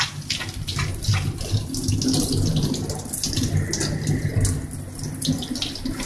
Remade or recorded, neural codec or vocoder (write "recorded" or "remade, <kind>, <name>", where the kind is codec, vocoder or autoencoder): recorded